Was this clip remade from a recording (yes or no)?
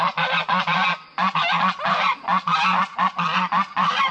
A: no